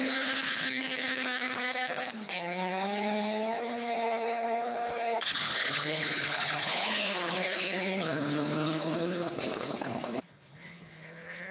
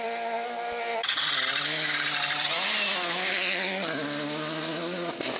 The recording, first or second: second